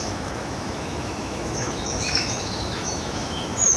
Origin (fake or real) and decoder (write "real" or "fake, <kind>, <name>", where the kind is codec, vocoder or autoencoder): fake, autoencoder, DAC-VAE